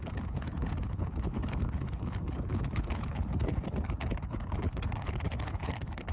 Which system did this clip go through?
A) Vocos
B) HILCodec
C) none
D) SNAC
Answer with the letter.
B